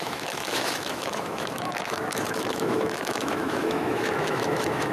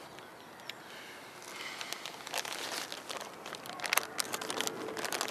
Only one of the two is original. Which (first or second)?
second